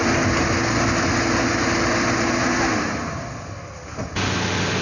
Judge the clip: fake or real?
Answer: real